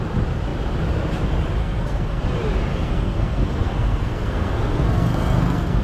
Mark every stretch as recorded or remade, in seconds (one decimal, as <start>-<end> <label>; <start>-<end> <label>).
0.0-1.6 recorded; 1.6-2.2 remade; 2.2-2.7 recorded; 2.7-5.8 remade